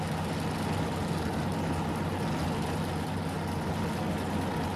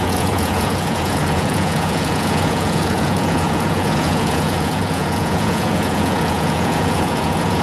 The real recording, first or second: first